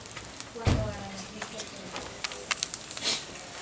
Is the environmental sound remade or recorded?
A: recorded